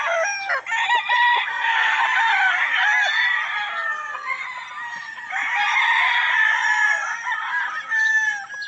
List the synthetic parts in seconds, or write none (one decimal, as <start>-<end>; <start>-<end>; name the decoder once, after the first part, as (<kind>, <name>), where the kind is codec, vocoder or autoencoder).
1.5-2.0 (codec, SNAC); 3.7-4.4